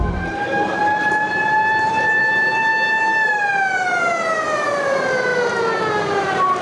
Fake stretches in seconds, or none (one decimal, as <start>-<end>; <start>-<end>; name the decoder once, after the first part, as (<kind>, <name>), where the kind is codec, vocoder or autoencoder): 0.0-2.7 (vocoder, BigVGAN v2); 4.7-5.3; 5.9-6.6